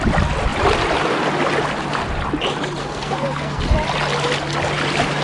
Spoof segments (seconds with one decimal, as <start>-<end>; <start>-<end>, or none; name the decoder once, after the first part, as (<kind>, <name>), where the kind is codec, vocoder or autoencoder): 2.8-3.6 (codec, SNAC)